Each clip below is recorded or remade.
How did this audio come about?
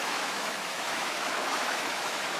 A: remade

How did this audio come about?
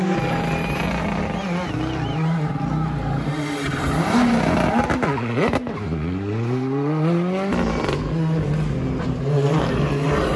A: recorded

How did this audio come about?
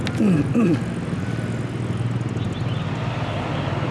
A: recorded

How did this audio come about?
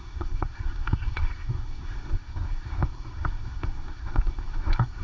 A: remade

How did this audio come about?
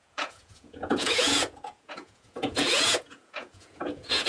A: remade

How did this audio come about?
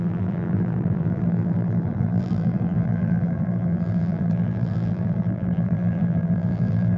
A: remade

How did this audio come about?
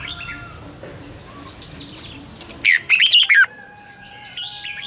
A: recorded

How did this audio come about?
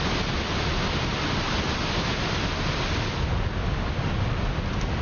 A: recorded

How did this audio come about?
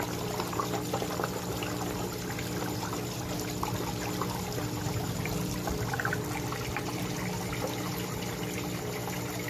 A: recorded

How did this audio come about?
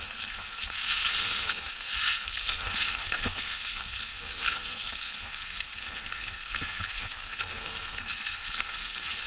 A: remade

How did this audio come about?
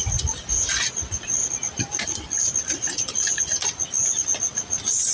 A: recorded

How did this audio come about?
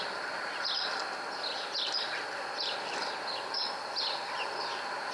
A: recorded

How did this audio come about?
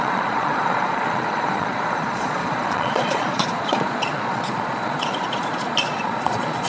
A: remade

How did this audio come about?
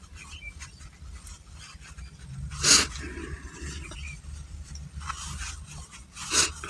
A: recorded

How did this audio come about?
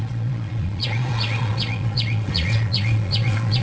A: remade